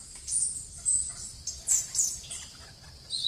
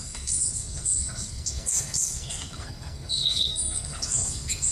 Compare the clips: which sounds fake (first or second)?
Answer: second